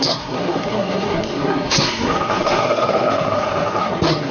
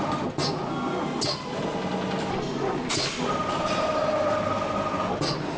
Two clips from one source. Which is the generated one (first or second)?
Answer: first